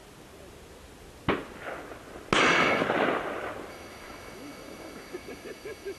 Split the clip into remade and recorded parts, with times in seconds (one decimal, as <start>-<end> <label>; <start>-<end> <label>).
0.0-2.4 recorded; 2.4-2.8 remade; 2.8-3.7 recorded; 3.7-6.0 remade